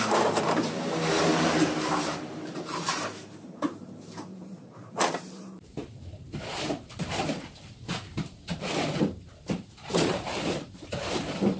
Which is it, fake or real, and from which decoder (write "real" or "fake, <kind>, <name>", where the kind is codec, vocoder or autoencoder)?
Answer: fake, vocoder, BigVGAN v2